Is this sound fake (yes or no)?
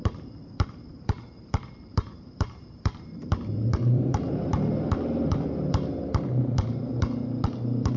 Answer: yes